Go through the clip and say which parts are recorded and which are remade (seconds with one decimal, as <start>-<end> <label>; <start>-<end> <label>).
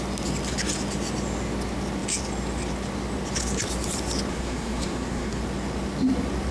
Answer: 0.0-4.3 recorded; 4.3-5.4 remade; 5.4-6.5 recorded